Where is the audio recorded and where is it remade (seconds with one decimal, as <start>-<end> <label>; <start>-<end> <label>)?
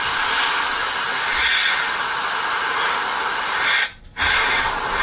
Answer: 0.0-5.0 recorded